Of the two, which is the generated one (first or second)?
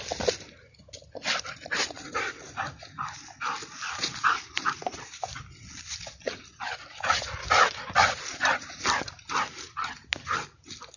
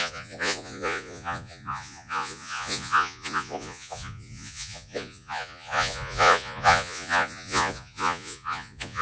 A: second